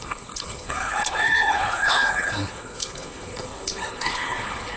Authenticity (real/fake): fake